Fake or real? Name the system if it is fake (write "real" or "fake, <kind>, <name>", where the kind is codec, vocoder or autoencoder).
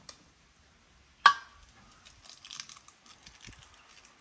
real